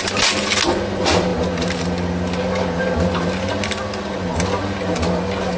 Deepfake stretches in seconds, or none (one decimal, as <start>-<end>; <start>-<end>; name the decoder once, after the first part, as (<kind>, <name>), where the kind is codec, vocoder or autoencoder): none